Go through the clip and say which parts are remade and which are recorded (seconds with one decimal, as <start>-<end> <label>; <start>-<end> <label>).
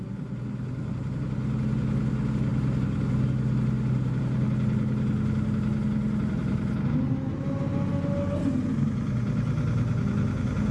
0.0-10.7 recorded